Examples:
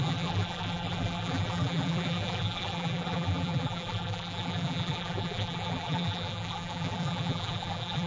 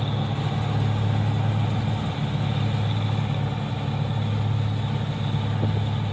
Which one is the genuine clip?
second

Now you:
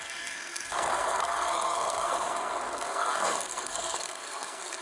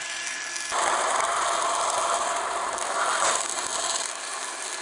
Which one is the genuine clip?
second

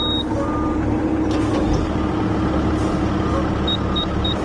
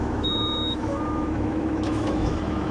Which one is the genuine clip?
first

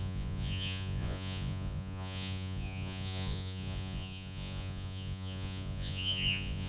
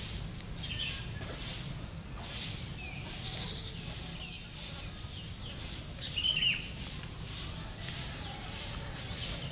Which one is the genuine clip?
second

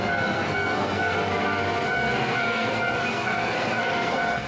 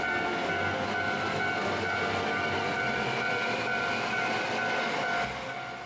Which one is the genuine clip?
second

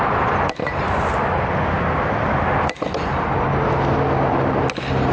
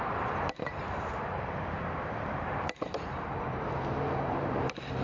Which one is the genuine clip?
first